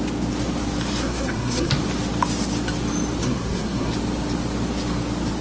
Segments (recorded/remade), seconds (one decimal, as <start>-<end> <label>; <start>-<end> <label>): 0.0-1.0 recorded; 1.0-1.7 remade; 1.7-3.2 recorded; 3.2-3.9 remade; 3.9-5.4 recorded